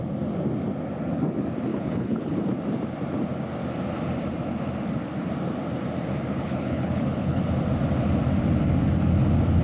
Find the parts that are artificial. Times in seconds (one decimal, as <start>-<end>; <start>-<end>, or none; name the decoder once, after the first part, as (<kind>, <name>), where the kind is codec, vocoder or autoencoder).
1.7-2.4 (codec, HILCodec); 6.3-7.4